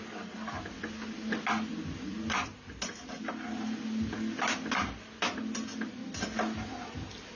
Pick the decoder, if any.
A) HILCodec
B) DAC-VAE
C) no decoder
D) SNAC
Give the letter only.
C